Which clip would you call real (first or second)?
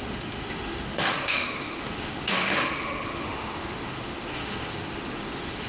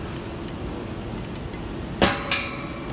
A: second